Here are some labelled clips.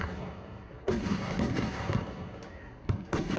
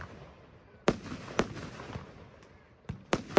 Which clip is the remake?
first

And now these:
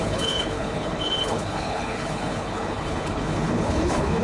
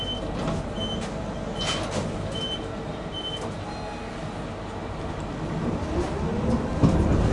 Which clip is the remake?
first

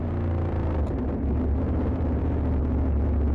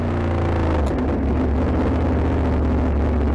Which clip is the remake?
first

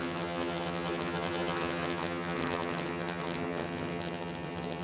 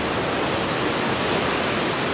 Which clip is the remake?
first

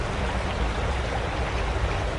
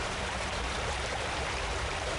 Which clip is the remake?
second